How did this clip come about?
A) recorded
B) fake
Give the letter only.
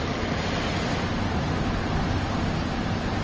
A